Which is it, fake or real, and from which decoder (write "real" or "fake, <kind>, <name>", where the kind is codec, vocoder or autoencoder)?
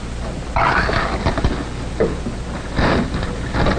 real